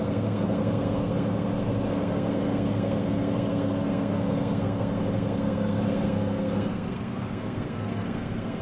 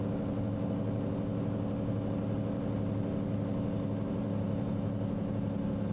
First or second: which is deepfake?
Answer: first